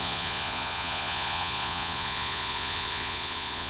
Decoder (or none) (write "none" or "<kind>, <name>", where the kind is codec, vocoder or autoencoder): vocoder, Vocos